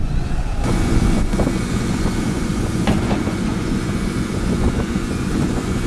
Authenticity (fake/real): fake